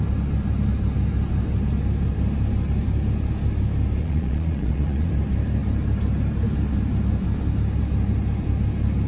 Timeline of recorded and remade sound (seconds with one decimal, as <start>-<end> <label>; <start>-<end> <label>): 0.0-4.0 recorded; 4.0-5.1 remade; 5.1-9.1 recorded

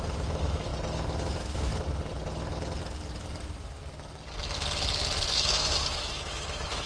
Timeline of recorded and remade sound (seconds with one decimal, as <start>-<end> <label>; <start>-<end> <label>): 0.0-0.7 remade; 0.7-1.2 recorded; 1.2-1.7 remade; 1.7-5.3 recorded; 5.3-6.9 remade

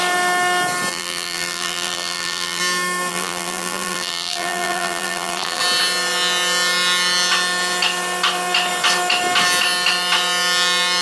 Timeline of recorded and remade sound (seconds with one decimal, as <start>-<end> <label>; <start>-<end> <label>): 0.0-0.9 recorded; 0.9-2.6 remade; 2.6-3.1 recorded; 3.1-5.6 remade; 5.6-11.0 recorded

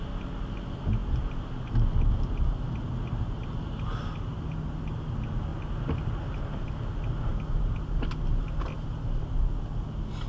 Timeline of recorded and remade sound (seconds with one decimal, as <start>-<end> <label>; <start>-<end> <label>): 0.0-10.3 recorded

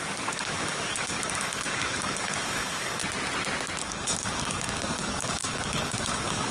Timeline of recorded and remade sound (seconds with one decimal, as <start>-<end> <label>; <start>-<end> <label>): 0.0-3.0 remade; 3.0-3.8 recorded; 3.8-6.5 remade

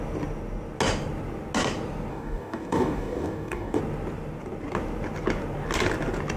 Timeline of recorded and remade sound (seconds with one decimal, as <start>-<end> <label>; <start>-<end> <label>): 0.0-2.1 recorded; 2.1-3.8 remade; 3.8-6.4 recorded